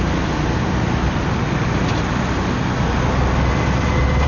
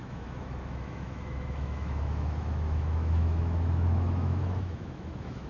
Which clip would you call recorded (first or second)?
first